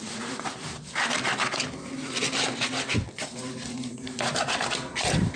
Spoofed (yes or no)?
no